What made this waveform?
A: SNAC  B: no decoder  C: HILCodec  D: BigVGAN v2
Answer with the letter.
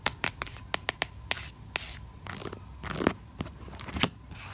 B